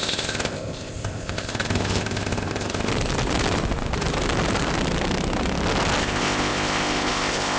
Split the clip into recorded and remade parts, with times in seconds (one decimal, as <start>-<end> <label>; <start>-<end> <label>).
0.0-2.9 remade; 2.9-6.0 recorded; 6.0-7.6 remade